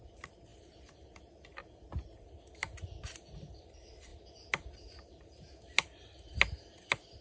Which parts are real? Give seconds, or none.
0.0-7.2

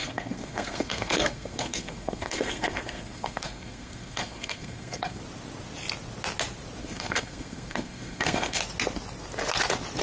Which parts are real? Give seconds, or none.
5.2-6.8; 8.6-10.0

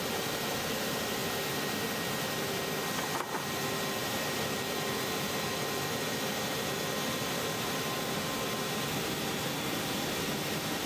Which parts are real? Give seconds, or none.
0.0-10.9

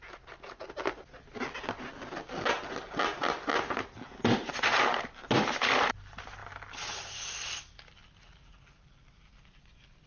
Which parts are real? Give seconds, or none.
0.0-10.1

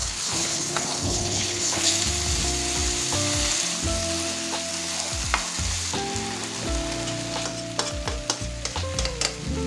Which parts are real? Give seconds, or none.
1.9-9.7